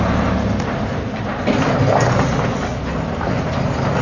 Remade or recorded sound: recorded